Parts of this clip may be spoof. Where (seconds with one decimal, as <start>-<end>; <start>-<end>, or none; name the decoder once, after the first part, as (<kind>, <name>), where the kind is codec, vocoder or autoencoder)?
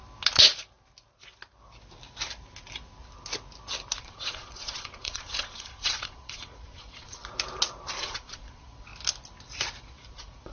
4.0-7.2 (vocoder, Vocos); 8.0-8.9; 9.8-10.5